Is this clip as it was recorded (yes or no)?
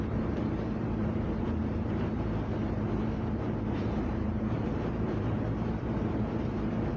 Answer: no